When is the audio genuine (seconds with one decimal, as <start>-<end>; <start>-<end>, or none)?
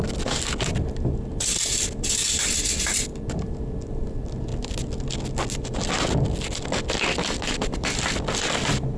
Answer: 0.0-9.0